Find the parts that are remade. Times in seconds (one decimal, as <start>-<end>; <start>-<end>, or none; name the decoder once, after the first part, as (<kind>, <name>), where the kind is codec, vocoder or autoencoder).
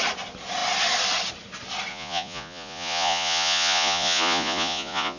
1.9-5.2 (vocoder, Vocos)